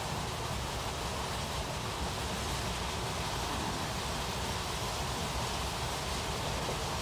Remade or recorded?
recorded